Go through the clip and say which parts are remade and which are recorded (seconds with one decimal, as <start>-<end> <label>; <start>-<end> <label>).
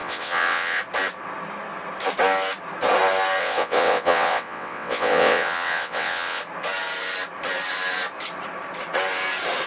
0.0-0.8 remade; 0.8-3.4 recorded; 3.4-6.4 remade; 6.4-9.7 recorded